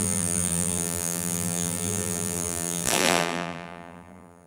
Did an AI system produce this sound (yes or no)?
yes